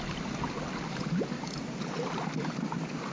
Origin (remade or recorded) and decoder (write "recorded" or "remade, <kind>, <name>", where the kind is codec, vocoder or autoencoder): recorded